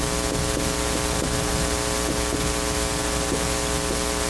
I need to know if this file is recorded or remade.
recorded